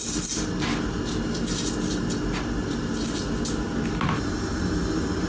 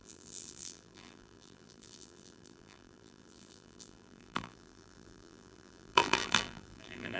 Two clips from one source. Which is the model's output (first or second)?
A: second